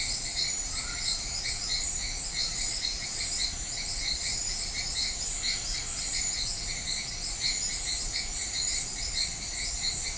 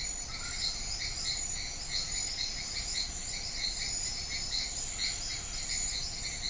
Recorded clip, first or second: second